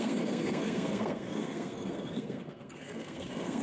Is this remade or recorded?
remade